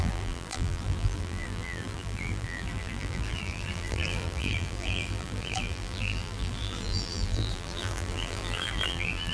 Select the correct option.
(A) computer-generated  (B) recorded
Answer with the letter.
A